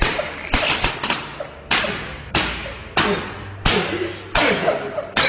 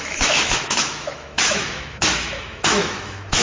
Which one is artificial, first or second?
second